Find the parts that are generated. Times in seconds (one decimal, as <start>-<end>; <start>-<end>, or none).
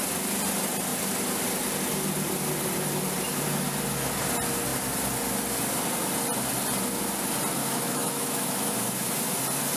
7.6-9.4